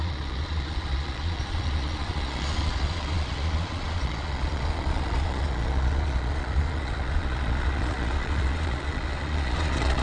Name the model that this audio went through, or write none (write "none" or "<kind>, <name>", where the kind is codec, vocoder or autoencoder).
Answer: vocoder, Vocos